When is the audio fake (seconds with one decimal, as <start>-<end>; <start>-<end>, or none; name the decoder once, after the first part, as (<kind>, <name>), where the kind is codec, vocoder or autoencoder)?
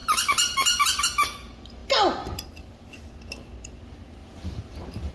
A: 4.2-5.1 (vocoder, BigVGAN v2)